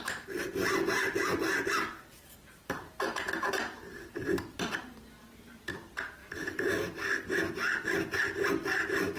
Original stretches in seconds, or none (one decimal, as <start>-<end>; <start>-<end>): 0.0-6.2; 6.7-9.2